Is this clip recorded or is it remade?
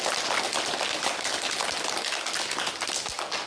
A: recorded